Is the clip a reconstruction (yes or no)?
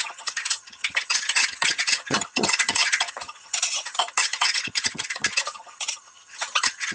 yes